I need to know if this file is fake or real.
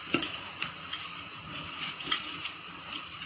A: fake